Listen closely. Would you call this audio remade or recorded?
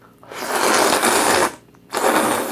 recorded